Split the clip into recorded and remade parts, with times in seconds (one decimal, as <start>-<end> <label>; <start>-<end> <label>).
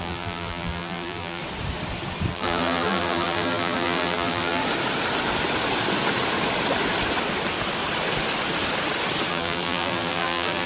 0.0-1.4 remade; 1.4-2.3 recorded; 2.3-4.6 remade; 4.6-9.3 recorded; 9.3-10.7 remade